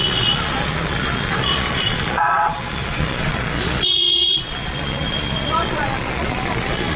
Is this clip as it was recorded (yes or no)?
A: no